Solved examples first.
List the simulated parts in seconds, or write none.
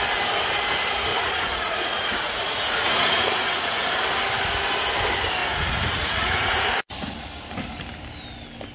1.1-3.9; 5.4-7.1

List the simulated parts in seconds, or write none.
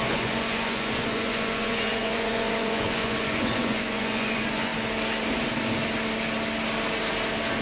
0.0-4.7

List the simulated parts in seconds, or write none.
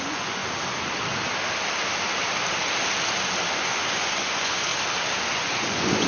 0.0-0.4; 3.5-4.7; 5.3-6.1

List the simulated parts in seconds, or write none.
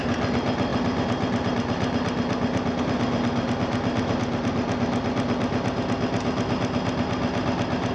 none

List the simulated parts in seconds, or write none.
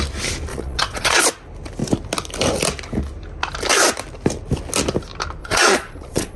0.5-1.2; 5.4-6.4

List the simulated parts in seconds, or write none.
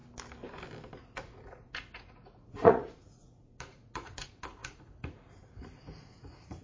1.0-6.6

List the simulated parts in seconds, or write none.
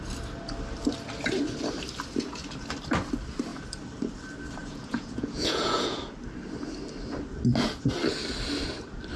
4.6-6.0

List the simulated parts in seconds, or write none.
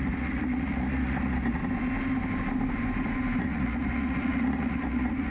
0.0-1.6; 3.4-5.3